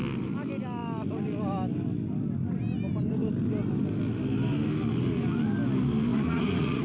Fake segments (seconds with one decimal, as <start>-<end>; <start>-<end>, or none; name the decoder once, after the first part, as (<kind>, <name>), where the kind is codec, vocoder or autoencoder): 6.1-6.8 (vocoder, Vocos)